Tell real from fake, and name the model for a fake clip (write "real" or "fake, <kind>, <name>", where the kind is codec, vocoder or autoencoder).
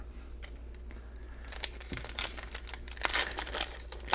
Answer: real